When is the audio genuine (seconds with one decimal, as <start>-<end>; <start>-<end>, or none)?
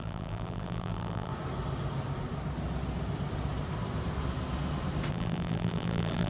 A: 1.3-5.1